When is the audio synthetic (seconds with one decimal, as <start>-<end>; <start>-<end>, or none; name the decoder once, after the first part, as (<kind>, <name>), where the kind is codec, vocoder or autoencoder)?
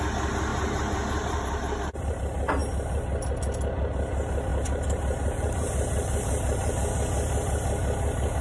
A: 0.5-2.2 (vocoder, BigVGAN v2); 4.5-6.7